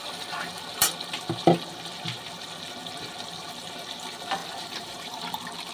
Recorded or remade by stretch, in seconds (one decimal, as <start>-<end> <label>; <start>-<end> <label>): 0.0-4.4 recorded; 4.4-5.2 remade; 5.2-5.7 recorded